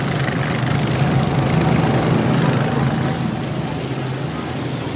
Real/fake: real